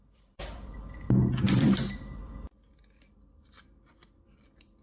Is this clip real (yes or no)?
no